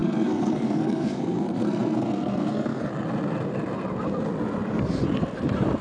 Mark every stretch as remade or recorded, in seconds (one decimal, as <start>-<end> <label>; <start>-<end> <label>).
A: 0.0-2.9 remade; 2.9-5.8 recorded

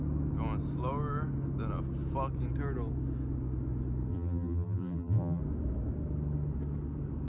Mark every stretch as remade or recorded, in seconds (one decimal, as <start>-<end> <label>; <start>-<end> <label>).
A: 0.0-4.1 recorded; 4.1-5.4 remade; 5.4-7.3 recorded

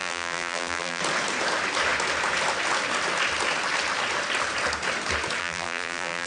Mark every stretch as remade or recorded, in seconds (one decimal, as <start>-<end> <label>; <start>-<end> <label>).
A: 0.0-1.0 remade; 1.0-5.4 recorded; 5.4-6.3 remade

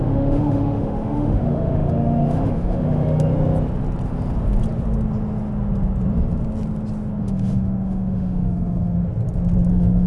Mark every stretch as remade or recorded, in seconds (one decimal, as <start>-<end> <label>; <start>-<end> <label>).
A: 0.0-3.3 remade; 3.3-7.2 recorded; 7.2-9.0 remade; 9.0-9.7 recorded; 9.7-10.1 remade

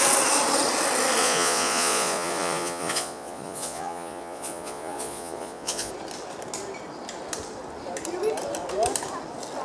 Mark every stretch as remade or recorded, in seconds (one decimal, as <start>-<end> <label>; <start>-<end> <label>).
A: 0.0-1.2 recorded; 1.2-5.9 remade; 5.9-9.6 recorded

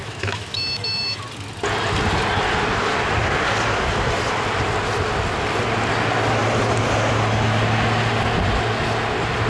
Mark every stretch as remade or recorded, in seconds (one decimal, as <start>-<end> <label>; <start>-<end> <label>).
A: 0.0-1.2 remade; 1.2-9.5 recorded

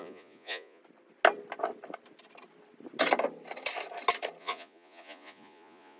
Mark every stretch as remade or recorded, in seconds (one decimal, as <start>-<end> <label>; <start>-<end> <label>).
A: 0.0-0.8 remade; 0.8-4.4 recorded; 4.4-6.0 remade

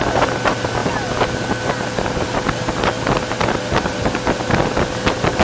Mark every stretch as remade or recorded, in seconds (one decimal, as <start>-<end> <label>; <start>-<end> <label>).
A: 0.0-5.4 recorded